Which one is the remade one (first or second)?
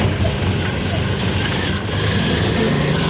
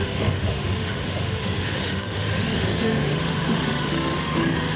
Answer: second